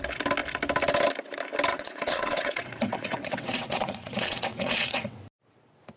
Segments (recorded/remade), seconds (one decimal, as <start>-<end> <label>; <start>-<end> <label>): 0.0-1.7 recorded; 1.7-5.2 remade; 5.2-6.0 recorded

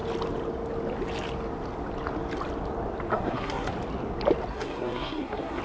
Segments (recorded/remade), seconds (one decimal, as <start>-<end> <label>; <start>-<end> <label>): 0.0-3.1 recorded; 3.1-3.7 remade; 3.7-4.5 recorded; 4.5-5.6 remade

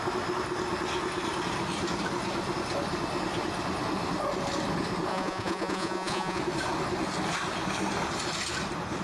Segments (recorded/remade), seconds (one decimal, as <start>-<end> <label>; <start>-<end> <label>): 0.0-5.1 recorded; 5.1-6.4 remade; 6.4-9.0 recorded